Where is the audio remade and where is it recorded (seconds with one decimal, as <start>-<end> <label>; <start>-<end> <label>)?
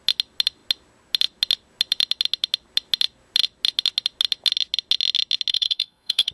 0.0-5.5 recorded; 5.5-6.3 remade